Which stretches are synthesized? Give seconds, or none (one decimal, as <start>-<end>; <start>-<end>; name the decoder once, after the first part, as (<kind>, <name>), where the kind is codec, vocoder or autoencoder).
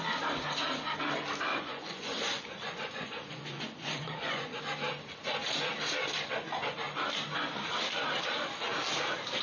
1.5-4.6 (vocoder, Vocos)